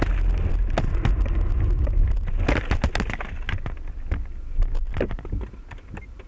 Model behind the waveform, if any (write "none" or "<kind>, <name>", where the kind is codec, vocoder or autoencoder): none